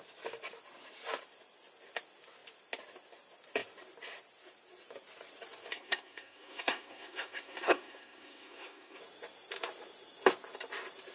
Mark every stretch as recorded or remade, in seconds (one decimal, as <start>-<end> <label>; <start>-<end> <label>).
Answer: 0.0-5.7 recorded; 5.7-9.0 remade; 9.0-11.1 recorded